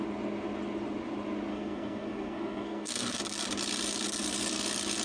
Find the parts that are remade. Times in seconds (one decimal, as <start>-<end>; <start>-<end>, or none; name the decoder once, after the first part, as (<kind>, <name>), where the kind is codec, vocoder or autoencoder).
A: 1.5-3.2 (codec, SNAC)